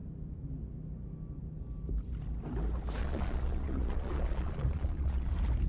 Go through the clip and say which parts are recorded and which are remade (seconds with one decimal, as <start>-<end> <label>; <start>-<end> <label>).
0.0-3.0 recorded; 3.0-5.3 remade; 5.3-5.7 recorded